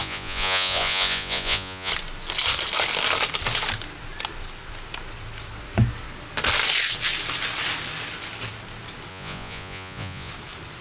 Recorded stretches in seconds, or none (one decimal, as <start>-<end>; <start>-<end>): 1.9-9.1; 10.3-10.8